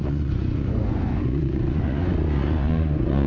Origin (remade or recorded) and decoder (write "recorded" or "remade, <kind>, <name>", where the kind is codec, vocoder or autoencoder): remade, vocoder, Vocos